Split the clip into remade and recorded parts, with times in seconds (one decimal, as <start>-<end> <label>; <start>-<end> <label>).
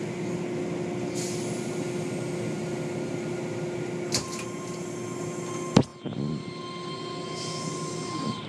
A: 0.0-8.5 recorded